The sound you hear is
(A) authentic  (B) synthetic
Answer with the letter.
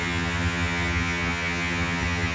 B